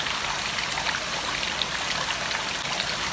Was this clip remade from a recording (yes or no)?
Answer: no